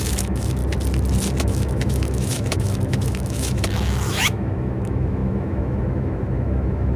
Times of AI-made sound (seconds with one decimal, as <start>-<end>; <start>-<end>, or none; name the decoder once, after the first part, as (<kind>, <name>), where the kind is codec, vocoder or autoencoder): 0.0-0.6 (autoencoder, DAC-VAE); 1.4-7.0